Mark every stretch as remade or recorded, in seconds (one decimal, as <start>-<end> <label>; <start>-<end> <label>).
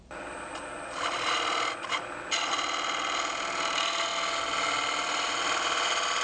0.0-4.1 remade; 4.1-5.4 recorded; 5.4-6.2 remade